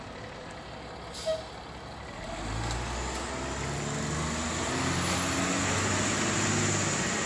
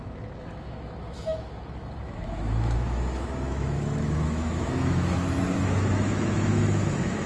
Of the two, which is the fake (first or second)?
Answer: second